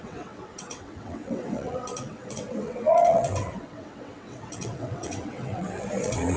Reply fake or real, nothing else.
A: fake